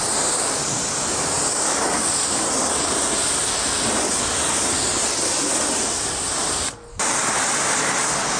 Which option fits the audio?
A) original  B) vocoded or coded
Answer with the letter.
A